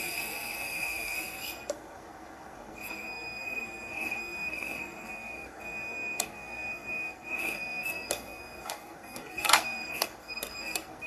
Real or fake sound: fake